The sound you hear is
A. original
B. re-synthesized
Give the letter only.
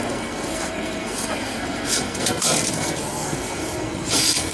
B